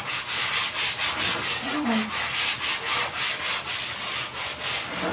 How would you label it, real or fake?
real